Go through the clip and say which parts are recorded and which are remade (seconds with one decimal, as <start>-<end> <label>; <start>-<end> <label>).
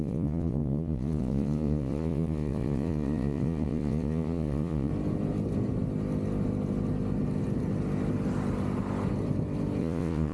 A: 0.0-4.9 remade; 4.9-9.8 recorded; 9.8-10.3 remade